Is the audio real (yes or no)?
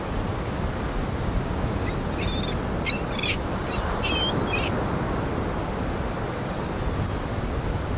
yes